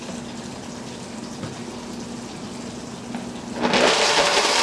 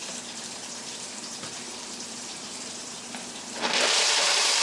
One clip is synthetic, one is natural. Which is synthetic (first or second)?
second